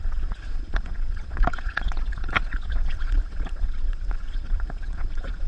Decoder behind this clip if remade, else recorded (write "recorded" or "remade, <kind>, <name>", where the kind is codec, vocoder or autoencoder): remade, vocoder, Vocos